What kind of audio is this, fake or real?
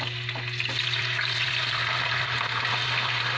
real